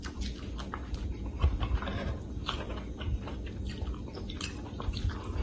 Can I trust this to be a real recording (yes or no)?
yes